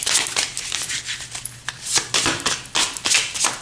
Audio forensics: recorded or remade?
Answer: recorded